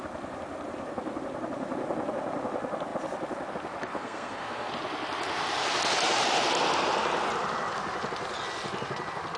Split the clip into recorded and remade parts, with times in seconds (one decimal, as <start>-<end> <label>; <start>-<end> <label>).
0.0-3.9 recorded; 3.9-4.7 remade; 4.7-9.4 recorded